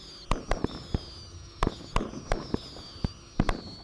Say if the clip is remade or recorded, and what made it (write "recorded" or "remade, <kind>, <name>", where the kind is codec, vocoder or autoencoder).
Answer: recorded